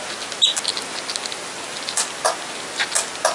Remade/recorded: recorded